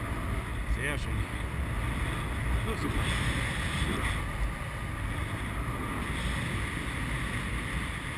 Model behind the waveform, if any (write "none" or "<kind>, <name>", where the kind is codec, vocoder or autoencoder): none